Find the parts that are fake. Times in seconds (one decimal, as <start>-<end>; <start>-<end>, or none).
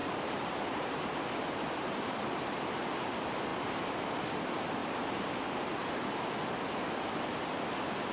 0.0-2.2; 4.8-5.7